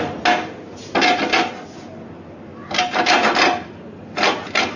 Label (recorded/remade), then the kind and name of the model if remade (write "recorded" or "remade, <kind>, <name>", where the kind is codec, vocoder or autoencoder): recorded